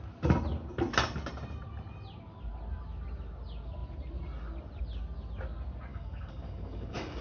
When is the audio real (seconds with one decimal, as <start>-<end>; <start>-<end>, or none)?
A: 0.0-5.9